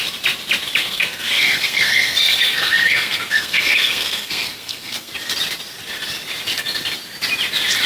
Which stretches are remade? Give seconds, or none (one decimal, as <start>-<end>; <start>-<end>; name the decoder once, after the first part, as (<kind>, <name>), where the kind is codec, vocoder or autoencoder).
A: 0.8-5.1 (codec, SNAC)